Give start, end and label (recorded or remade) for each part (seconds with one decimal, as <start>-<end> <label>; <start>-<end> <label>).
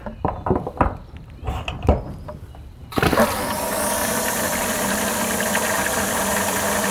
0.0-6.9 recorded